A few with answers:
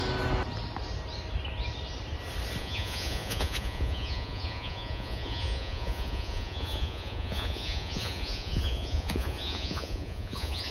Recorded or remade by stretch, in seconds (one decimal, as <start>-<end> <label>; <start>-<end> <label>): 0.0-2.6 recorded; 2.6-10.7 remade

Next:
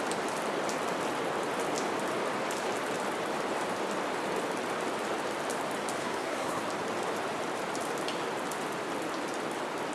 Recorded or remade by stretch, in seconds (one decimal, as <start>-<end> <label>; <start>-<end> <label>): 0.0-6.0 recorded; 6.0-6.6 remade; 6.6-9.9 recorded

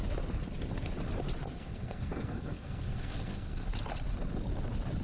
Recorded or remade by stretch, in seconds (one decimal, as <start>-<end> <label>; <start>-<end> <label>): 0.0-1.4 recorded; 1.4-3.7 remade; 3.7-5.0 recorded

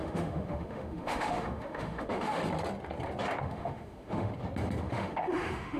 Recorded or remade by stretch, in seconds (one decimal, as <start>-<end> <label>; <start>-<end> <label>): 0.0-2.4 remade; 2.4-3.4 recorded; 3.4-4.3 remade; 4.3-4.8 recorded; 4.8-5.8 remade